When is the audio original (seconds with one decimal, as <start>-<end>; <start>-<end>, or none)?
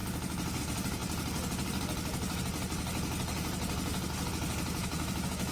0.0-4.8